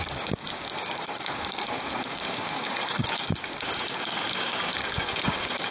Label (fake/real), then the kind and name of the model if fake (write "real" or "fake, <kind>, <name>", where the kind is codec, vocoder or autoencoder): fake, codec, DAC